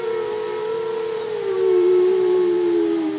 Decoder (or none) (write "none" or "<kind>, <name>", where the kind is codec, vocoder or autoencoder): vocoder, BigVGAN v2